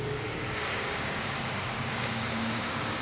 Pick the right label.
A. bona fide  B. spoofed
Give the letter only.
B